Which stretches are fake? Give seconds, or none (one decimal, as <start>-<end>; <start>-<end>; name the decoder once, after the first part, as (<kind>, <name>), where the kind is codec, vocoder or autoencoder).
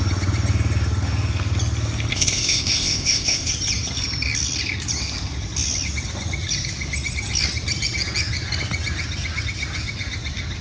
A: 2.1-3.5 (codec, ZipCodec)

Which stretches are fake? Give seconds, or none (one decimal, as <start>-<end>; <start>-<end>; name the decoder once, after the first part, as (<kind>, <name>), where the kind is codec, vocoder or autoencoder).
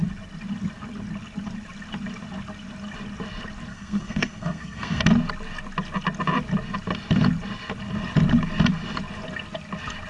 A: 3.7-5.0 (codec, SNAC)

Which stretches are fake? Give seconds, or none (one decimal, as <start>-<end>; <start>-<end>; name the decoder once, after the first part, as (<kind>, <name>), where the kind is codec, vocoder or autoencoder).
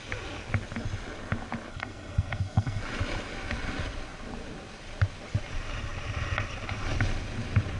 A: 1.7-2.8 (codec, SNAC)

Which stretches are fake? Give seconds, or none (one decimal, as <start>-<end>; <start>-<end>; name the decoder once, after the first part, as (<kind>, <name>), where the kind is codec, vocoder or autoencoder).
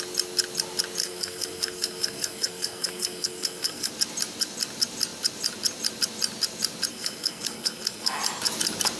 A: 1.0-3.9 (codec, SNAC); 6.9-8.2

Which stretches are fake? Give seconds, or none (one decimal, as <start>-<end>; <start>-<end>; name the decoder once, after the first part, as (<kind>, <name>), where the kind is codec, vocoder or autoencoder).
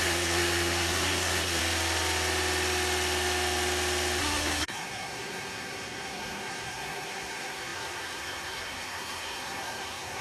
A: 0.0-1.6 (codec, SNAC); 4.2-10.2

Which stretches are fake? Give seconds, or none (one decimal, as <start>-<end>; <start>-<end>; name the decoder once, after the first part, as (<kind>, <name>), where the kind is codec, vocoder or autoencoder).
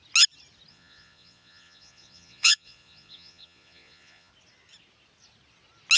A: 0.7-4.3 (vocoder, Vocos)